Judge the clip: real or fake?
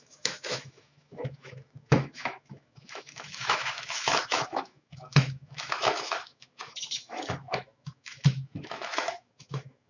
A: fake